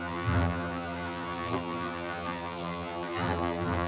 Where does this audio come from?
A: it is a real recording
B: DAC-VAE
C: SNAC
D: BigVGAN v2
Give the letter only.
D